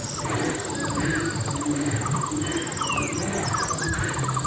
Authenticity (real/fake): real